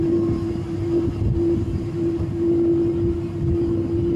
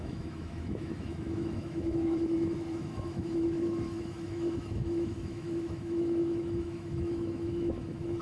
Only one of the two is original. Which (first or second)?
first